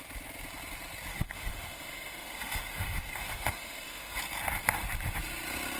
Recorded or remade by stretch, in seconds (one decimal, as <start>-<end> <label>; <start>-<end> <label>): 0.0-1.1 recorded; 1.1-4.2 remade; 4.2-5.8 recorded